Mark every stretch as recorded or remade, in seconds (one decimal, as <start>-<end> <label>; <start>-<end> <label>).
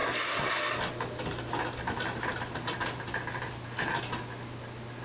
0.0-5.0 recorded